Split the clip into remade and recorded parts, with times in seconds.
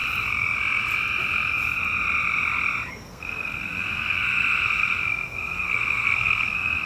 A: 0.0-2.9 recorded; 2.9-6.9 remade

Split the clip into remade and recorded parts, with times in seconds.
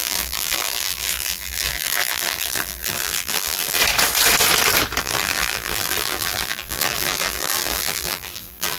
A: 0.0-3.8 remade; 3.8-5.0 recorded; 5.0-8.8 remade